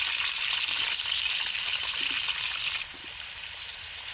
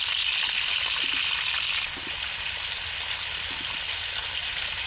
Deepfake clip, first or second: first